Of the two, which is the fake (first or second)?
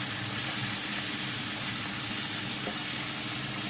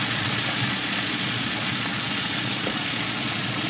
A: second